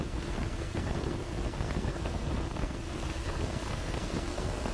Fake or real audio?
fake